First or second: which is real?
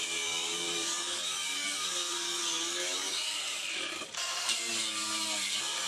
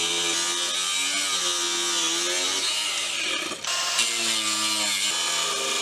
second